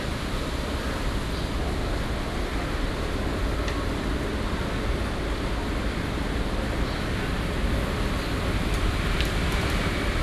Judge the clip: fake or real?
real